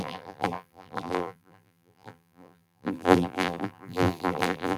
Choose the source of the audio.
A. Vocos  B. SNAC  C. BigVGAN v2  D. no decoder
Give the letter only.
C